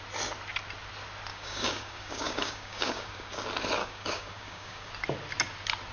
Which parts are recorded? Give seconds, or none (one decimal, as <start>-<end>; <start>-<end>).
0.0-1.3; 3.4-3.8; 4.9-5.9